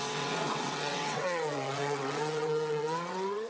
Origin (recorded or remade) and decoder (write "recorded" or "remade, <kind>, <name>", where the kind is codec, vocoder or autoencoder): remade, vocoder, WaveNeXt